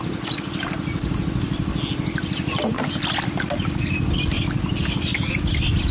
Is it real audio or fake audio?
real